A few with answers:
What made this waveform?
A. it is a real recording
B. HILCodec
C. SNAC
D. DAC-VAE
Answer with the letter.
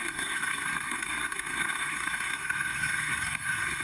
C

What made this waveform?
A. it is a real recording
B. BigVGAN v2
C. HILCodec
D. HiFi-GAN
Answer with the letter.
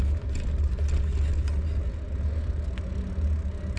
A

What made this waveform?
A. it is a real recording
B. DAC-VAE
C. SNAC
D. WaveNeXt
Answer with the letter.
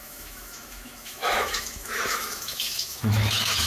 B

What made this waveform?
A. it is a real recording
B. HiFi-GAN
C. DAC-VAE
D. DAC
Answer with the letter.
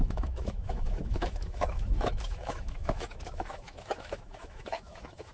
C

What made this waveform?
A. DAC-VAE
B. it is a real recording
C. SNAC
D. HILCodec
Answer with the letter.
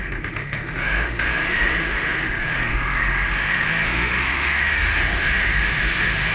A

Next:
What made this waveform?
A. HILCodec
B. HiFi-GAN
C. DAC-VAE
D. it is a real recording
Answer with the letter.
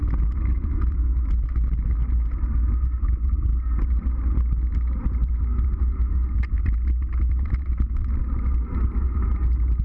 D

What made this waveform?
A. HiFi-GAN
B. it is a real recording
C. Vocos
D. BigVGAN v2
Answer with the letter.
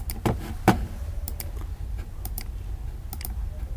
B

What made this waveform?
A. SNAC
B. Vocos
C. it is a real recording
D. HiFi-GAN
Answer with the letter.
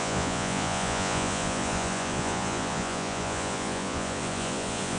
B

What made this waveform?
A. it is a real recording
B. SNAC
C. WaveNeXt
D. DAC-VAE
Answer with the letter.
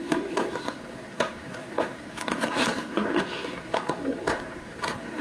B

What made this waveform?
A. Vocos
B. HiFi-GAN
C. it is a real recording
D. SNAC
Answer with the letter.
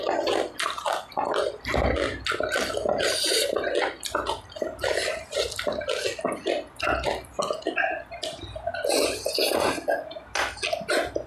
C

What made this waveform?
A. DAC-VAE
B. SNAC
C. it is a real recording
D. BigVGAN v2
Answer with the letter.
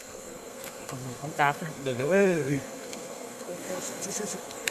B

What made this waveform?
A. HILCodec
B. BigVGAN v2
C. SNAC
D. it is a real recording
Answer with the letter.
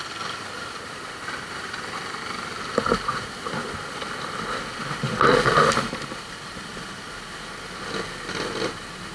D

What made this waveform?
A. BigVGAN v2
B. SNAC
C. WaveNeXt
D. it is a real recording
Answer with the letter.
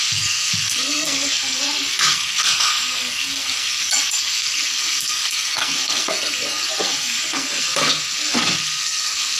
B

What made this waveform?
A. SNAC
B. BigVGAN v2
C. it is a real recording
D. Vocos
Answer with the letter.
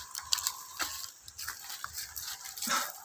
B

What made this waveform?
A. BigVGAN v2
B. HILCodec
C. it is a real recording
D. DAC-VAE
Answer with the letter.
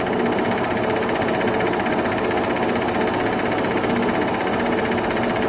C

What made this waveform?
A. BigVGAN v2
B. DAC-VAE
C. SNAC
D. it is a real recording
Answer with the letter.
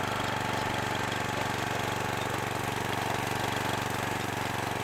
D